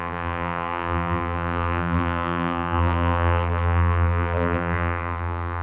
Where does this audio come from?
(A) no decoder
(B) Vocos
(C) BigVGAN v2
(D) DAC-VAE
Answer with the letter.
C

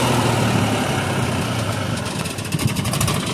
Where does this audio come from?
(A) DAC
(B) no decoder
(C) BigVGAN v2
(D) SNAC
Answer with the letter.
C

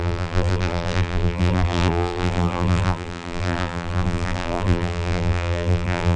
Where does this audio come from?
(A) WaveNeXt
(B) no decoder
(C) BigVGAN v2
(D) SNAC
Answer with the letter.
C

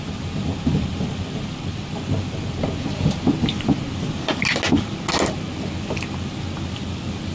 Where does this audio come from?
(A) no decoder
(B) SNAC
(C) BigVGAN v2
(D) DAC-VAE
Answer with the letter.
A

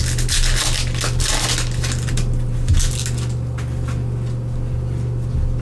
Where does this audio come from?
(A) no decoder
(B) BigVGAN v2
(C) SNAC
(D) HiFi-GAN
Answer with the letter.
A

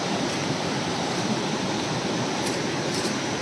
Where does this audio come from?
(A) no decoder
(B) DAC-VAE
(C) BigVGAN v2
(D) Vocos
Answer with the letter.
C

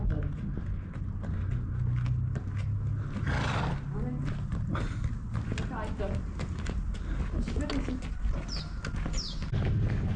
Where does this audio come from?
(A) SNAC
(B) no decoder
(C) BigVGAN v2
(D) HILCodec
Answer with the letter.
B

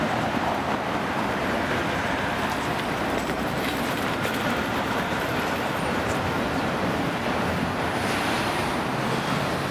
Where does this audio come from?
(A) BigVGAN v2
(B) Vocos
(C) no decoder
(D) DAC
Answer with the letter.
A